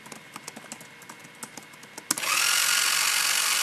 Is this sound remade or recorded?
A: recorded